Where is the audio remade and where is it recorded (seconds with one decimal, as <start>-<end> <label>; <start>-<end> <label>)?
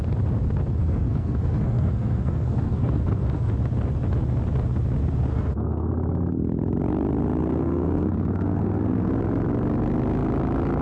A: 0.0-0.8 recorded; 0.8-3.5 remade; 3.5-5.3 recorded; 5.3-5.9 remade; 5.9-7.5 recorded; 7.5-9.1 remade; 9.1-10.8 recorded